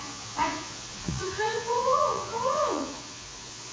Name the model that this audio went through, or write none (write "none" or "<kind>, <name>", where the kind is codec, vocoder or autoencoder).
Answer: vocoder, Vocos